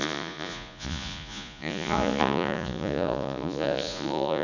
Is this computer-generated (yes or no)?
yes